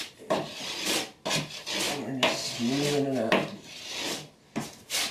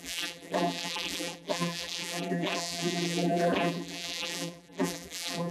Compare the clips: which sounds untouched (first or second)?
first